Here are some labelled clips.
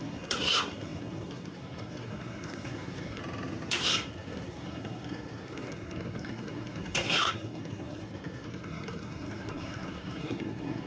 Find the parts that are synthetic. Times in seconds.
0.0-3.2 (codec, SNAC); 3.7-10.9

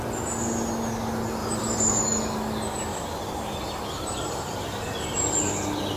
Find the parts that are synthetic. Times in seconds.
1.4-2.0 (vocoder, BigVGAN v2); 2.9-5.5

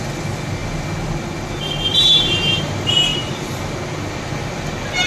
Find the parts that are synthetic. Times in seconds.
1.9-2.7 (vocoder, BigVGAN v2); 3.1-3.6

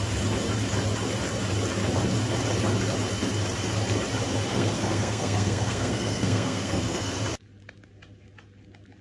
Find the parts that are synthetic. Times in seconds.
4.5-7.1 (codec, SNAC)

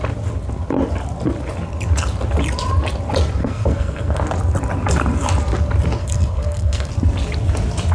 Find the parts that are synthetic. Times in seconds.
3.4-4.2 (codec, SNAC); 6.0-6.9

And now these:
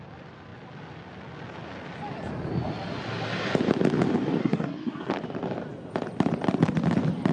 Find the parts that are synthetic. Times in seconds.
4.4-5.1 (codec, SNAC)

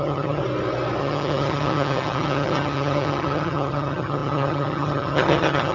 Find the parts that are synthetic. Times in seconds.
0.0-0.4 (vocoder, HiFi-GAN); 1.0-5.7